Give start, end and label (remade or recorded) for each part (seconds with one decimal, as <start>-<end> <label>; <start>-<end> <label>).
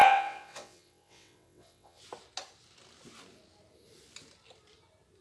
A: 0.0-2.0 remade; 2.0-5.2 recorded